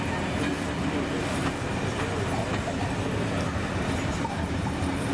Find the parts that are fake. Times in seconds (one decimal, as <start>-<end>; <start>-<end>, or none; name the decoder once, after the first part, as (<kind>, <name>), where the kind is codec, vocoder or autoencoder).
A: none